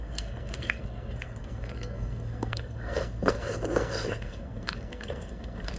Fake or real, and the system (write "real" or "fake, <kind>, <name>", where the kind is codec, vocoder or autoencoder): fake, codec, SNAC